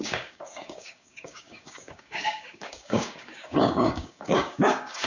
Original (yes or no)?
no